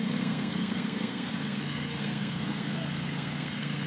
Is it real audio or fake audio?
fake